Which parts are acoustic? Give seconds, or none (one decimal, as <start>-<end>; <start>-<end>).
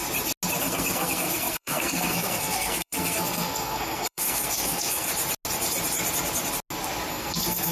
0.0-0.6; 5.1-7.1